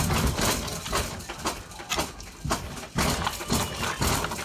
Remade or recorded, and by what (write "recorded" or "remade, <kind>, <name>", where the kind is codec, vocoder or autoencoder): recorded